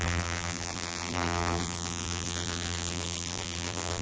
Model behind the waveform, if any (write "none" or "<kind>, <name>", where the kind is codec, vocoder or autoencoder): vocoder, BigVGAN v2